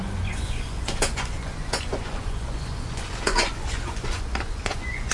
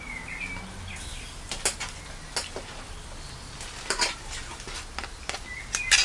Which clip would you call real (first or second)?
second